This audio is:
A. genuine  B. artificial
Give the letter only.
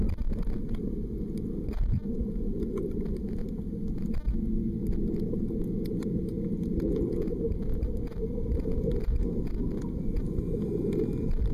A